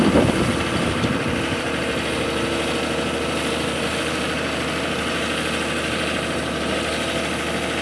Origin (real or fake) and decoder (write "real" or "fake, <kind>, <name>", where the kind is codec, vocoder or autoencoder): real